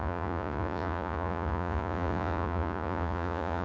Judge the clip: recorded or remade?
remade